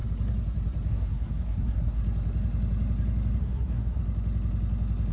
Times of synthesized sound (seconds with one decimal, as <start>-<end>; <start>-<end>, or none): 0.9-2.0; 3.4-4.0